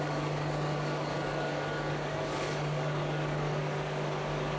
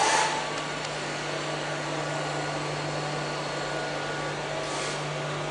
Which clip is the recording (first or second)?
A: second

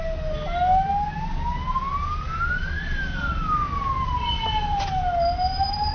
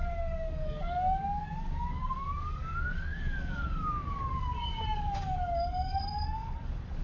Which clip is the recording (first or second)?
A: first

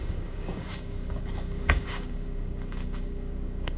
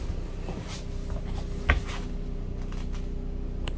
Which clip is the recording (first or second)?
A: second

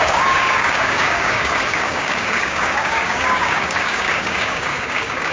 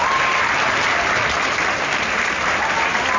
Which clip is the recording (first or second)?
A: second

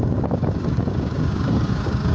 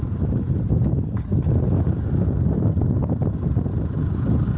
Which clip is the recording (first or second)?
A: second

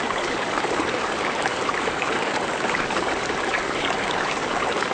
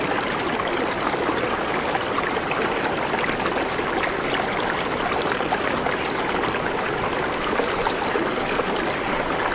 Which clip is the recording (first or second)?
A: second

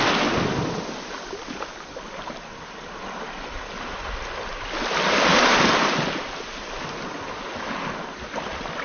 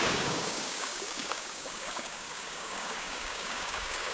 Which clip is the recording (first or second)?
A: first